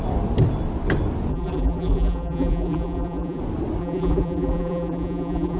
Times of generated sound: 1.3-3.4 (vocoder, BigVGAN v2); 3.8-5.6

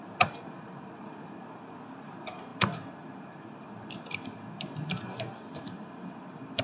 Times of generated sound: 0.0-6.6 (vocoder, BigVGAN v2)

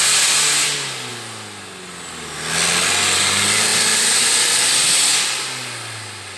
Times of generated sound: none

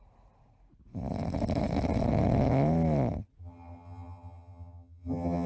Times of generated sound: 3.4-5.5 (vocoder, HiFi-GAN)

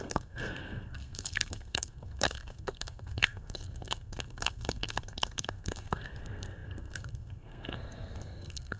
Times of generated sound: 0.0-8.8 (codec, SNAC)